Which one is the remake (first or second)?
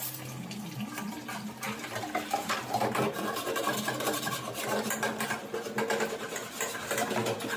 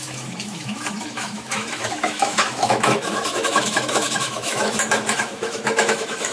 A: second